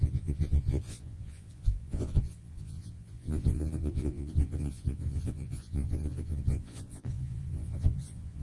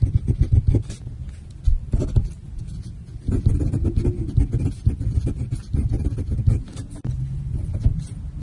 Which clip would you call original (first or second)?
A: second